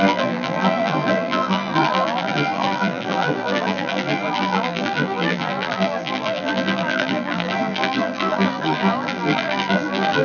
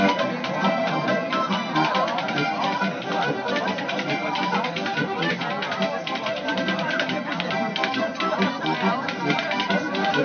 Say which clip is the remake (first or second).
first